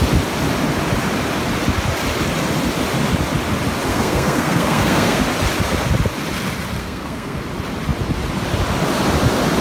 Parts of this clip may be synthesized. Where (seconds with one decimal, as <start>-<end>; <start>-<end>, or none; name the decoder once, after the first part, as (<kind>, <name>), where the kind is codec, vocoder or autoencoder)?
3.9-5.2 (codec, SNAC); 6.8-7.4